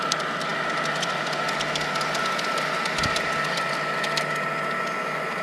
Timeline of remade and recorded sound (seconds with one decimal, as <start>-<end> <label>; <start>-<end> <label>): 0.0-5.4 recorded

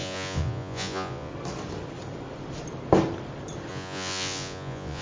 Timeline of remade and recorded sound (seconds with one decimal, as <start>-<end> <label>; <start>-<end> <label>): 0.0-1.3 remade; 1.3-3.7 recorded; 3.7-5.0 remade

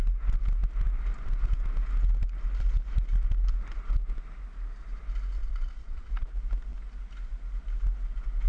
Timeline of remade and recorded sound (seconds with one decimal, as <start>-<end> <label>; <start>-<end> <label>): 0.0-5.4 recorded; 5.4-6.1 remade; 6.1-8.5 recorded

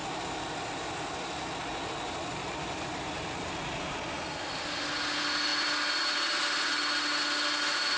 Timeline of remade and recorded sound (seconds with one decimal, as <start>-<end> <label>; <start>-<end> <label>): 0.0-8.0 recorded